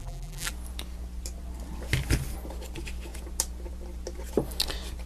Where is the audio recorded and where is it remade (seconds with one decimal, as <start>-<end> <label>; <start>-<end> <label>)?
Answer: 0.0-0.5 remade; 0.5-5.1 recorded